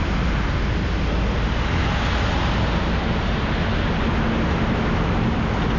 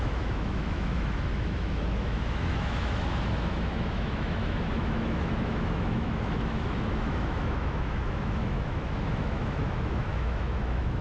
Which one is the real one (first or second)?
first